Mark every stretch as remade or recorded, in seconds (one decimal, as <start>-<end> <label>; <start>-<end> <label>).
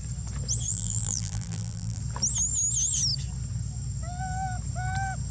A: 0.0-0.7 recorded; 0.7-2.0 remade; 2.0-5.3 recorded